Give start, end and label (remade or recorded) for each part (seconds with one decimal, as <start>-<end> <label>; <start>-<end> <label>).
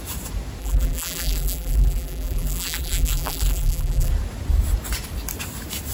0.0-0.6 recorded; 0.6-4.1 remade; 4.1-5.9 recorded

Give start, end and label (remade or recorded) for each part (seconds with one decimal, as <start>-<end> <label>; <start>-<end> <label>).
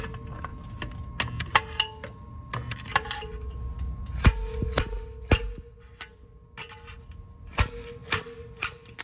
0.0-8.0 recorded; 8.0-9.0 remade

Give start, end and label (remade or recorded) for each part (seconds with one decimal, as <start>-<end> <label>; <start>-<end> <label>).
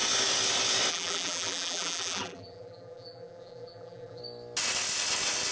0.0-0.9 recorded; 0.9-4.2 remade; 4.2-5.5 recorded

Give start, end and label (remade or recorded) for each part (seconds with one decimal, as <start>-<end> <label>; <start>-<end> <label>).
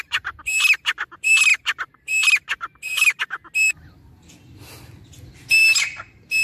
0.0-6.4 recorded